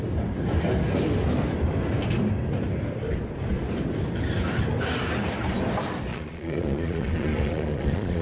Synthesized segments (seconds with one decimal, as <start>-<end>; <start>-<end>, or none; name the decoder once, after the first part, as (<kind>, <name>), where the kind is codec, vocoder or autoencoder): 6.1-8.2 (vocoder, Vocos)